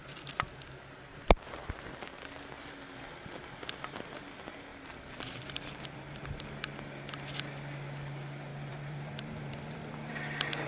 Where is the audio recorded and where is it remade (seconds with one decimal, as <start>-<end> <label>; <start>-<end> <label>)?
0.0-1.1 recorded; 1.1-1.9 remade; 1.9-4.7 recorded; 4.7-6.4 remade; 6.4-8.5 recorded; 8.5-10.1 remade; 10.1-10.7 recorded